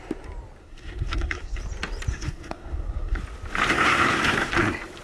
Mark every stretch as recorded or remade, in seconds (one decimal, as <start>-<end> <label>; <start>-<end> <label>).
0.0-0.6 recorded; 0.6-1.6 remade; 1.6-2.1 recorded; 2.1-3.2 remade; 3.2-3.7 recorded; 3.7-4.5 remade; 4.5-5.0 recorded